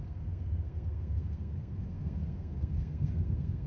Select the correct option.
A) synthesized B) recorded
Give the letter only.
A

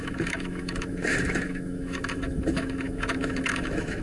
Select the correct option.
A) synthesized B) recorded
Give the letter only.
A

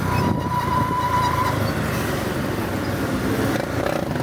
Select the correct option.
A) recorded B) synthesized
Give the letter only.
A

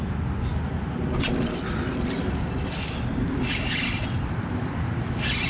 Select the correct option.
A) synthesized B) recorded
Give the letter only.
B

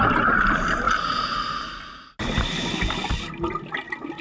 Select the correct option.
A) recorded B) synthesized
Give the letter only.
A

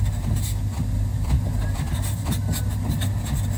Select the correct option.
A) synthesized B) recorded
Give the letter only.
B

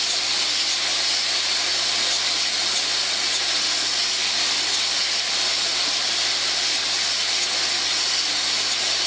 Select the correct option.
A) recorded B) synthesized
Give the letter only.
A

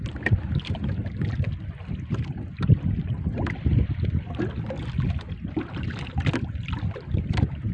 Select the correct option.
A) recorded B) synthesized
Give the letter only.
A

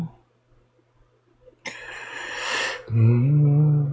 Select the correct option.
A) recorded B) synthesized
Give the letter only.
A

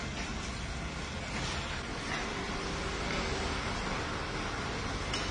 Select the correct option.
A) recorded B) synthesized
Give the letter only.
A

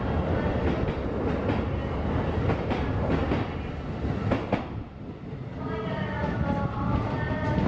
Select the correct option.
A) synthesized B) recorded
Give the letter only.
B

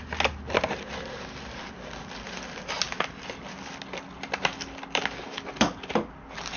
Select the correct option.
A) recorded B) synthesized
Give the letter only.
A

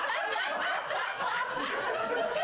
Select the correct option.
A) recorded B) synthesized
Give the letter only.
A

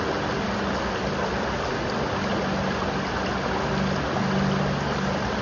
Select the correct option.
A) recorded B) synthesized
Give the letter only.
A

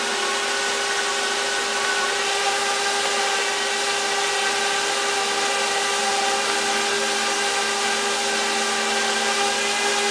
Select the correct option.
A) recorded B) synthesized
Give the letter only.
A